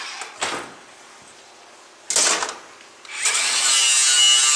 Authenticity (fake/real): real